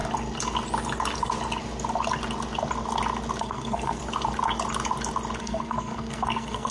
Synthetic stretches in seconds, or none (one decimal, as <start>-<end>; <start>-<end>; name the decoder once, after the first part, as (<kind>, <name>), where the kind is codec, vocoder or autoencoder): 3.4-4.0 (codec, SNAC); 5.4-6.7